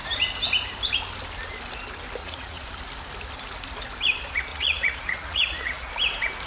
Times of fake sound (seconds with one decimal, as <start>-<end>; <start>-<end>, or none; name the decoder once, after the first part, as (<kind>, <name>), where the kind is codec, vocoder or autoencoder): 2.2-2.7 (vocoder, Vocos); 4.5-5.9